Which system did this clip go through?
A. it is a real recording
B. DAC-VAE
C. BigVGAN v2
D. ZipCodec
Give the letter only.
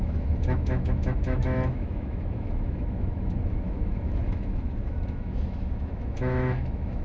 B